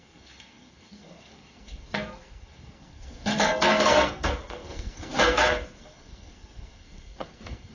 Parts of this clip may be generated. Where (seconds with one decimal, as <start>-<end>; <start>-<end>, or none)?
0.0-7.7